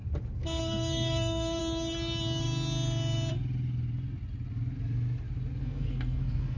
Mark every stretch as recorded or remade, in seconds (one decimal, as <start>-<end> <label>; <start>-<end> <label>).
0.0-0.6 recorded; 0.6-1.6 remade; 1.6-5.6 recorded; 5.6-6.6 remade